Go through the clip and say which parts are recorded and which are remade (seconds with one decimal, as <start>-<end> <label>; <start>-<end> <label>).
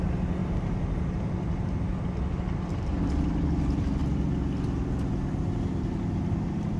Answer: 0.0-6.8 recorded